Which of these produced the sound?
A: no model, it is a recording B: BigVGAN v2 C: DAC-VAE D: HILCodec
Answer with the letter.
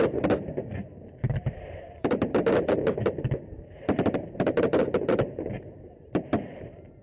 B